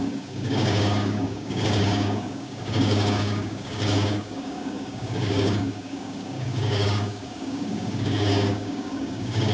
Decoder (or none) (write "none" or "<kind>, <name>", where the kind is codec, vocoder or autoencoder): codec, DAC